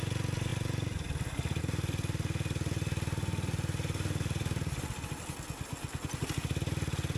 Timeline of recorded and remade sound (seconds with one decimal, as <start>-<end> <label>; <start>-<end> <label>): 0.0-7.2 recorded